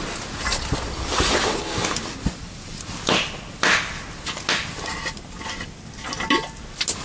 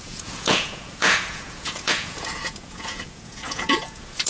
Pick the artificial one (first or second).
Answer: second